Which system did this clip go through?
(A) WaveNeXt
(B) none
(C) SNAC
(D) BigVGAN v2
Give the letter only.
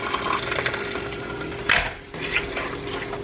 B